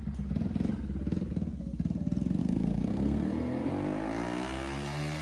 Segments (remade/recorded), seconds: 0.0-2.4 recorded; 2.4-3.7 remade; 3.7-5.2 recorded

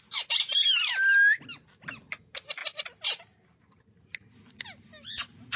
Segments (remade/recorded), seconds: 0.0-5.6 recorded